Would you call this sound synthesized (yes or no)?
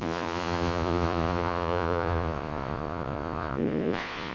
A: yes